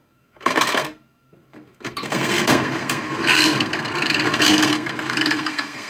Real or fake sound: fake